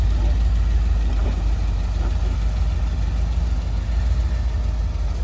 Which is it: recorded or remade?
recorded